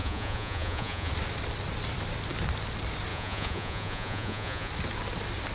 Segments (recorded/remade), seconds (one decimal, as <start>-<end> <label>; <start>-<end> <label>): 0.0-1.1 remade; 1.1-3.1 recorded; 3.1-4.7 remade; 4.7-5.5 recorded